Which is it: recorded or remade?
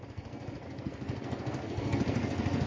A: remade